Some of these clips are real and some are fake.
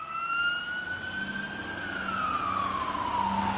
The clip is real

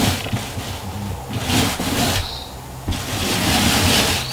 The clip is real